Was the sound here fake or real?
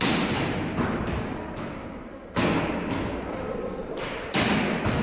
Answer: fake